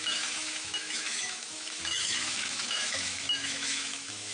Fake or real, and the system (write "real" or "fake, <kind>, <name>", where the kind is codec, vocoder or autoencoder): fake, autoencoder, DAC-VAE